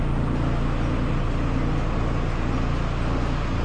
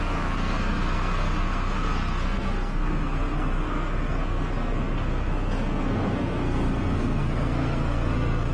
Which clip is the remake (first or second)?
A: second